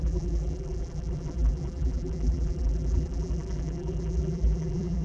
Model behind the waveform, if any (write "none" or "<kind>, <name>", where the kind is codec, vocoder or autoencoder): vocoder, BigVGAN v2